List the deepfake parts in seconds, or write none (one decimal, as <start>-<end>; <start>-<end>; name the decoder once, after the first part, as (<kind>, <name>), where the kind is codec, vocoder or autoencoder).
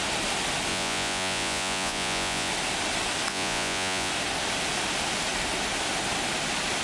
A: 0.7-2.5 (vocoder, Vocos); 3.3-4.1